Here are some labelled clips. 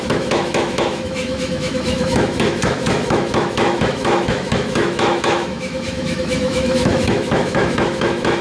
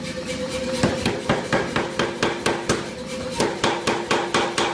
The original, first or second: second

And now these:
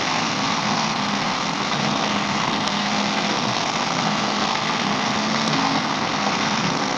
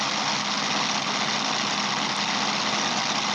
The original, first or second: second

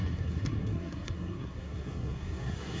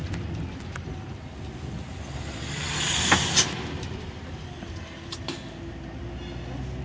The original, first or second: second